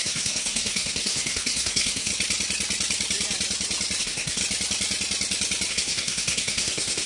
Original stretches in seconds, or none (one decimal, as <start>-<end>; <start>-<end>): 2.1-4.0; 4.4-5.7